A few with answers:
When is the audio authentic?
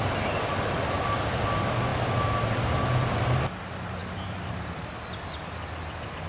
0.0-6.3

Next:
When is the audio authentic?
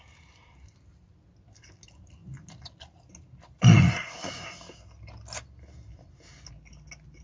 0.0-7.2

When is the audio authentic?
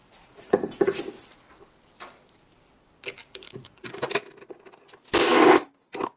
1.0-3.2; 3.9-6.2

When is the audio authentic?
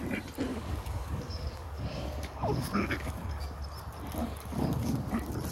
0.0-0.5; 3.6-4.2; 5.1-5.5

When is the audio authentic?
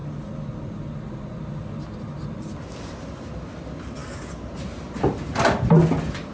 0.0-6.3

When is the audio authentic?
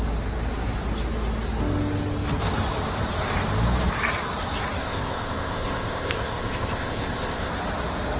0.0-4.8; 7.5-8.2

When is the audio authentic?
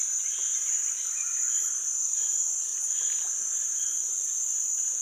0.0-5.0